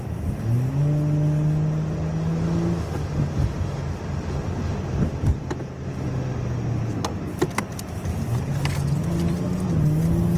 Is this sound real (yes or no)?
yes